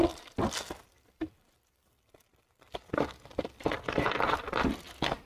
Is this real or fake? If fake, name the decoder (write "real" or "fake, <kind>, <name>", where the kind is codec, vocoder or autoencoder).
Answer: fake, vocoder, BigVGAN v2